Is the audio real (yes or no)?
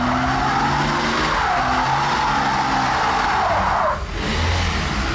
yes